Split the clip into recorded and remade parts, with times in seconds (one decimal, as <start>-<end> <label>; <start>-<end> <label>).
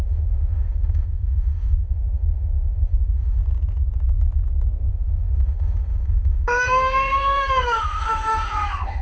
0.0-3.4 remade; 3.4-4.9 recorded; 4.9-9.0 remade